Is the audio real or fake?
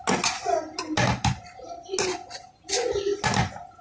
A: real